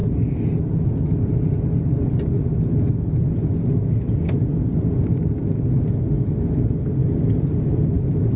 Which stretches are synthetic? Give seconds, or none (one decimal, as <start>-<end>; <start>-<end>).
none